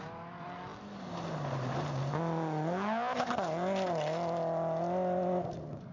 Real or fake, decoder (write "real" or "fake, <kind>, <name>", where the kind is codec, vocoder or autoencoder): real